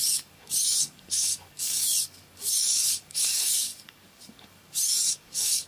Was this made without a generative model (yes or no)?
no